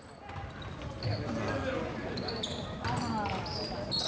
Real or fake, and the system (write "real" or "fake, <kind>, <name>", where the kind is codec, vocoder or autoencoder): real